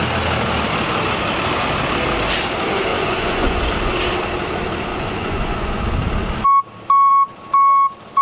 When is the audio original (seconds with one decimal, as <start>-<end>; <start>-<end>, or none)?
0.0-2.9; 3.7-4.9; 5.8-8.2